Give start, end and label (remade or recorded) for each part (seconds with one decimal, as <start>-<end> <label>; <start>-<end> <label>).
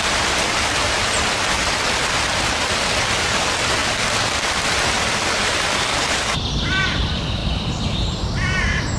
0.0-3.8 remade; 3.8-4.7 recorded; 4.7-9.0 remade